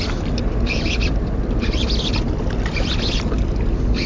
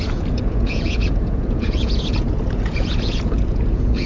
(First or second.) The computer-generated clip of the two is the second